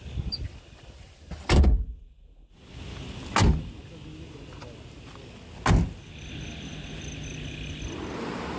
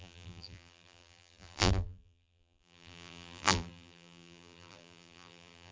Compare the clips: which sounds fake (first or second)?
second